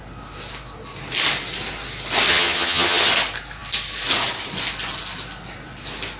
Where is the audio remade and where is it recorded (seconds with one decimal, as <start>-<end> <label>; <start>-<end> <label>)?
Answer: 0.0-2.3 recorded; 2.3-3.1 remade; 3.1-6.2 recorded